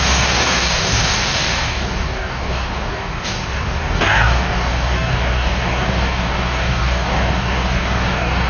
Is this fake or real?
fake